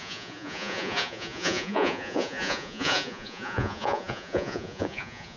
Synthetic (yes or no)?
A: yes